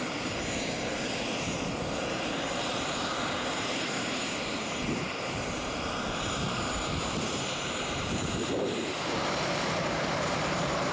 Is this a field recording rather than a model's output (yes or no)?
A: no